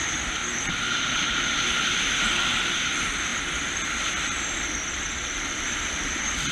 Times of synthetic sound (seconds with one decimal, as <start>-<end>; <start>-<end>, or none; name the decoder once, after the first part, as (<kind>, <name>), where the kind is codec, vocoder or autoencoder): none